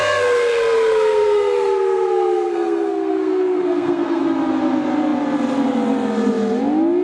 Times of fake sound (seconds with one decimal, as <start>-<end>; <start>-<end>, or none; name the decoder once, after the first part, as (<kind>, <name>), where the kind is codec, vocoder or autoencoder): 0.0-4.2 (codec, SNAC)